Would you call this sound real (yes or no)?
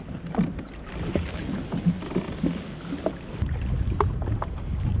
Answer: yes